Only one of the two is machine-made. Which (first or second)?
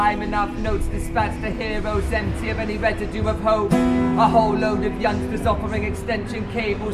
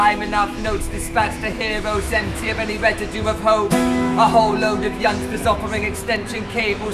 second